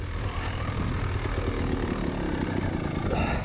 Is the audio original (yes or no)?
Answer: yes